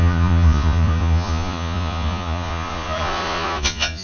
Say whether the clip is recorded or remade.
remade